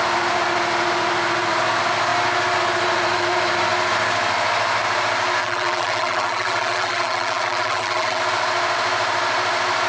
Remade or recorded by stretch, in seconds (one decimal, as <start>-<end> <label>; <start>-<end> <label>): 0.0-5.4 recorded; 5.4-8.2 remade; 8.2-9.9 recorded